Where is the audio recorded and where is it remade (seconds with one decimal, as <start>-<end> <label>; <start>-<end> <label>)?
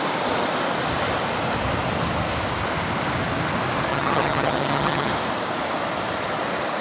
0.0-3.9 recorded; 3.9-5.1 remade; 5.1-6.8 recorded